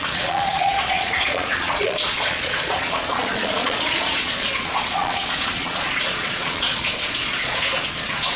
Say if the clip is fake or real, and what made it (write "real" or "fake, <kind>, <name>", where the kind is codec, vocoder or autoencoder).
fake, vocoder, Vocos